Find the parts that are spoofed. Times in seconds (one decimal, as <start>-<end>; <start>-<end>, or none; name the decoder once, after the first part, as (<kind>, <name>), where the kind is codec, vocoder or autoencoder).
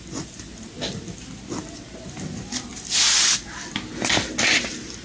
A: none